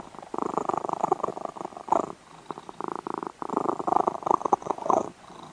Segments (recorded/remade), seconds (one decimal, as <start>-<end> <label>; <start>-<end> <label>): 0.0-4.6 recorded; 4.6-5.5 remade